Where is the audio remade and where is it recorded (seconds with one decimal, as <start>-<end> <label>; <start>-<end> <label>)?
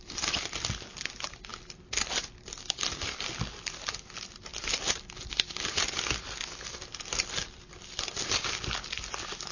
0.0-9.5 recorded